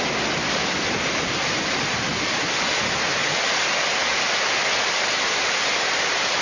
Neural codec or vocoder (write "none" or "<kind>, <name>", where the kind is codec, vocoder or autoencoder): none